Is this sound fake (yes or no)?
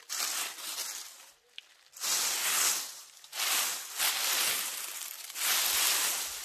no